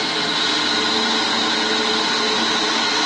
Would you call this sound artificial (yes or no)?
no